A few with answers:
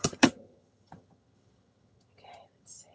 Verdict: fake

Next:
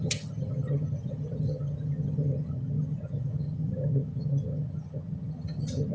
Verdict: fake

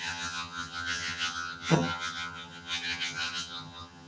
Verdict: fake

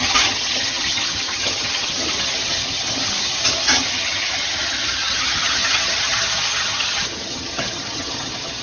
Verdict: fake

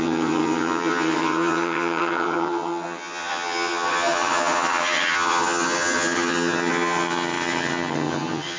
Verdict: fake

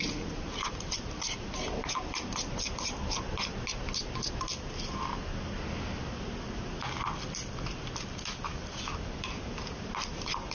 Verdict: real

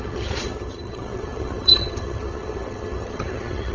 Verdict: fake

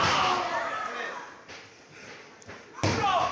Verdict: real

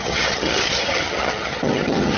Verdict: fake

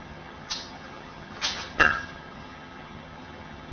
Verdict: fake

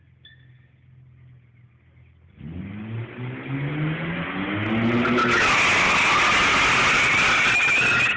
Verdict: real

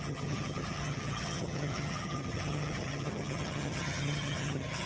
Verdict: fake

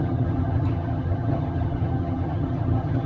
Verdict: fake